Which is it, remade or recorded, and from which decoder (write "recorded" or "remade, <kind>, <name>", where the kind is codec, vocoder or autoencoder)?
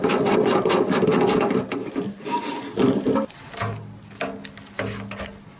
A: recorded